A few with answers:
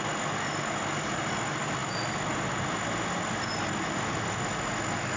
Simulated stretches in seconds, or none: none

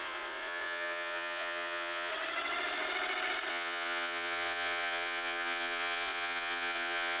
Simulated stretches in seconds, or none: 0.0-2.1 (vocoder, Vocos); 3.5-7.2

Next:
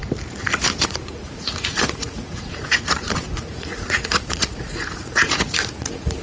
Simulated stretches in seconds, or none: 0.7-6.2 (vocoder, Vocos)

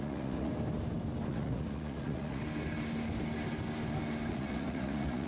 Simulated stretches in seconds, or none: 0.0-0.5 (vocoder, Vocos); 1.3-2.4; 4.3-5.3

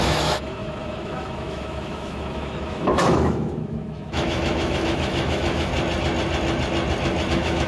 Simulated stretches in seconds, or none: 0.0-5.7 (autoencoder, DAC-VAE); 7.3-7.7